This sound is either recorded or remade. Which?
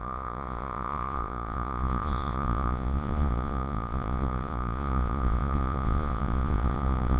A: remade